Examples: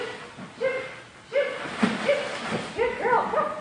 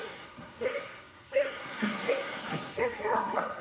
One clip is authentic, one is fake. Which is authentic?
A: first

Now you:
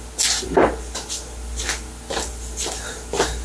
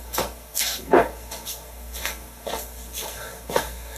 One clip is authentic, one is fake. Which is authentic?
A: first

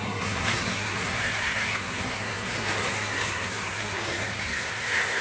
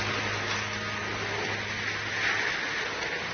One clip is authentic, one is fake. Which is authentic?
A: second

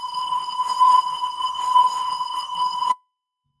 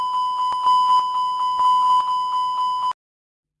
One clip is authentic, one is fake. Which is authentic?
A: second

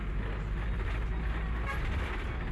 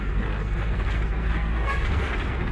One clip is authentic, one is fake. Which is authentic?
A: first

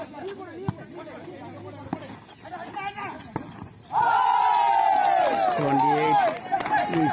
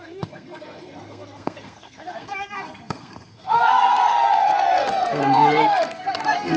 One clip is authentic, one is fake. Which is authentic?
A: first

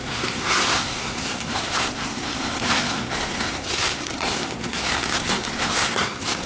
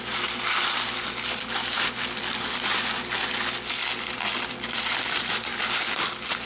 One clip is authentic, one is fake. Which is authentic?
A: second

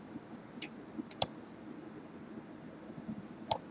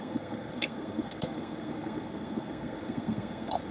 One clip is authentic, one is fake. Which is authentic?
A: first